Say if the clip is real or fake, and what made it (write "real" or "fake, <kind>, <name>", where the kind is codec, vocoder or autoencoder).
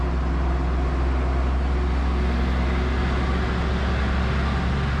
real